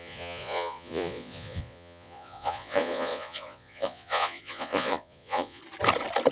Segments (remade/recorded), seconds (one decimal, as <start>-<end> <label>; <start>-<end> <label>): 0.0-5.6 remade; 5.6-6.3 recorded